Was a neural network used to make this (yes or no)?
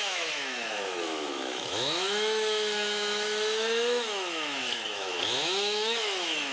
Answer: yes